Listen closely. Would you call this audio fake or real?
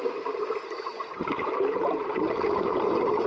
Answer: fake